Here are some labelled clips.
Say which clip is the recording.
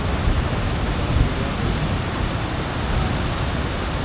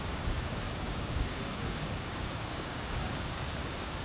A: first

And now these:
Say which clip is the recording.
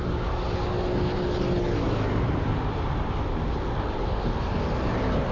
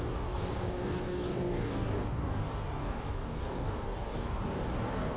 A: first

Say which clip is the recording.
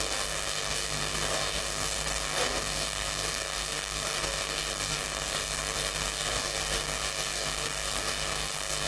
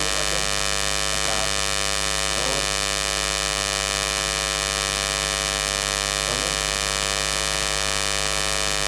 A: second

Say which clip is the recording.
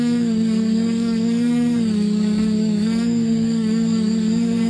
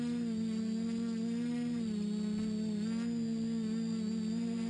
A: second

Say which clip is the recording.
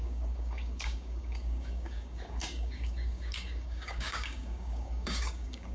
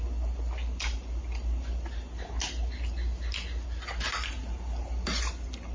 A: second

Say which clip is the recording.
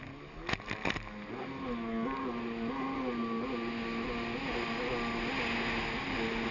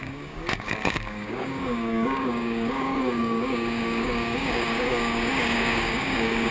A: first